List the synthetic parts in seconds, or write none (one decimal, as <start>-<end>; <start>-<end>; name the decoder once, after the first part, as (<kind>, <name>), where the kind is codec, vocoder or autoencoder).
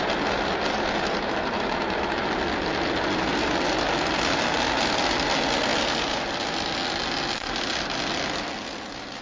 none